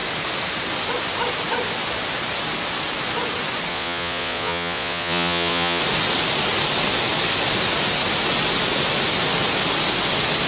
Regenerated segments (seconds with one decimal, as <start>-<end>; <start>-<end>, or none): 3.7-5.8